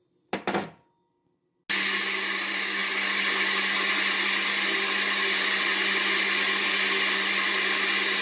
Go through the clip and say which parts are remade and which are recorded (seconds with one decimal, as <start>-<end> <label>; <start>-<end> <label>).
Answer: 0.0-8.2 recorded